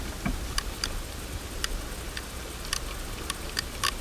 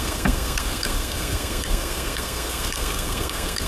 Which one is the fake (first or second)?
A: second